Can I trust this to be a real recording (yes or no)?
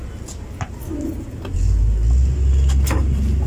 yes